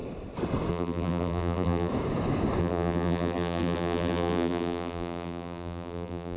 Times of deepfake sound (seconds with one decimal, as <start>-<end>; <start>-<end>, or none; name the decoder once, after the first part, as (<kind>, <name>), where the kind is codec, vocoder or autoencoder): 0.7-1.9 (vocoder, BigVGAN v2); 2.6-6.4